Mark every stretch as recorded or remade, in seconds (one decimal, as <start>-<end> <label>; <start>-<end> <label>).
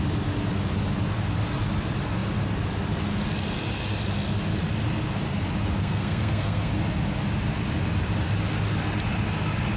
0.0-5.8 recorded; 5.8-6.7 remade; 6.7-9.8 recorded